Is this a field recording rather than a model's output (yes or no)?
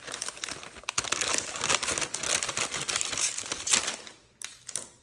yes